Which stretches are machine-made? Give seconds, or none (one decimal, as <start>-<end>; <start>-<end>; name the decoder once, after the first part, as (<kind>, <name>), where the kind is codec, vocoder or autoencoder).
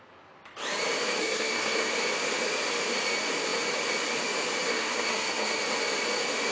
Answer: 1.2-1.9 (codec, SNAC); 4.7-5.6